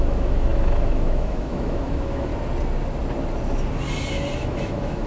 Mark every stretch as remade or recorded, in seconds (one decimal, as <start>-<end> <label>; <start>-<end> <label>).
0.0-2.3 remade; 2.3-4.4 recorded; 4.4-5.1 remade

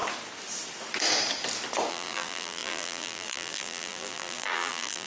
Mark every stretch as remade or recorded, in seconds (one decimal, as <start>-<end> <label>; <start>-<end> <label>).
0.0-1.9 recorded; 1.9-5.1 remade

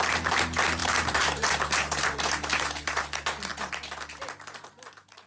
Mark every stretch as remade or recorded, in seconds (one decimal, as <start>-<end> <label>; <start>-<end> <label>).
0.0-0.8 recorded; 0.8-3.0 remade; 3.0-5.3 recorded